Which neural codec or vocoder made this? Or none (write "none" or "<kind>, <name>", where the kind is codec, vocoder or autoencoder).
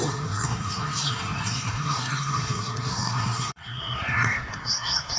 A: codec, SNAC